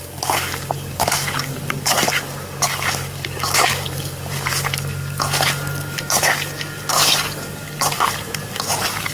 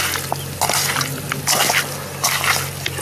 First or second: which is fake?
first